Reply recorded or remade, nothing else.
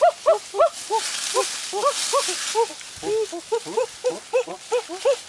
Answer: recorded